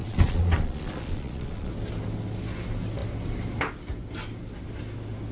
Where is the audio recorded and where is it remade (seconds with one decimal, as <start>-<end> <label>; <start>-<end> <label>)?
0.0-1.7 remade; 1.7-5.3 recorded